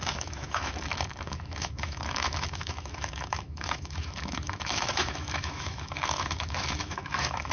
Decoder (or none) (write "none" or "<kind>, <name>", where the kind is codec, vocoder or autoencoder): autoencoder, DAC-VAE